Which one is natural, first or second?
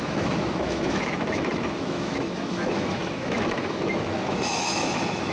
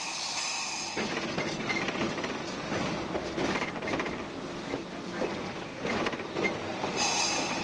second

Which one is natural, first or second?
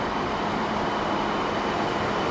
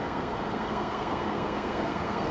first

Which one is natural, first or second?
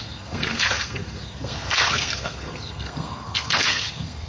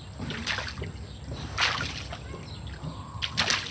second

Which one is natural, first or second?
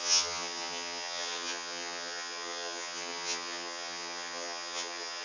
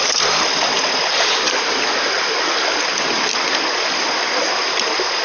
second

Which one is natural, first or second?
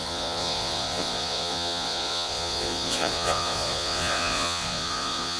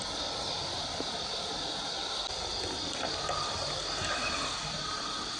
second